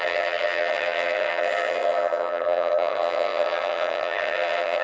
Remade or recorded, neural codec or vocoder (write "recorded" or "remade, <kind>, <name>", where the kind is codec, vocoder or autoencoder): remade, vocoder, HiFi-GAN